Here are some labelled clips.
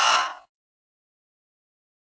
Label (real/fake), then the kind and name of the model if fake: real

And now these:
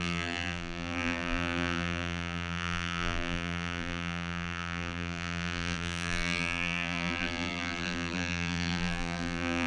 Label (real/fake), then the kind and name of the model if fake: fake, vocoder, BigVGAN v2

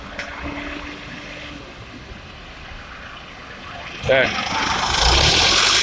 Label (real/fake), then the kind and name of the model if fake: real